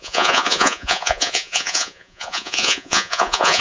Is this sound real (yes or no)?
no